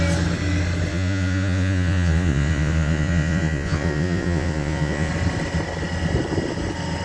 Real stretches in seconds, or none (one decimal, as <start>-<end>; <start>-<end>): 0.0-0.9; 5.1-7.0